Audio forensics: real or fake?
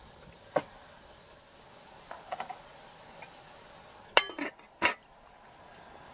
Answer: real